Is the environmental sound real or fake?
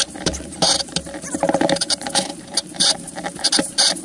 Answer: fake